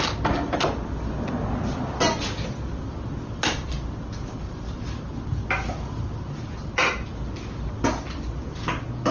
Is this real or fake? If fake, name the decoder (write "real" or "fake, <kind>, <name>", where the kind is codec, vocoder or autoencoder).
real